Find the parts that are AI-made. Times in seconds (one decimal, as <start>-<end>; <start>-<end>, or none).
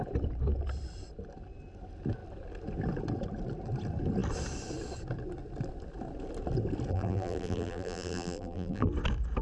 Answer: 6.9-8.9